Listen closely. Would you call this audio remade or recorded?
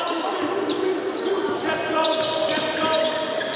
recorded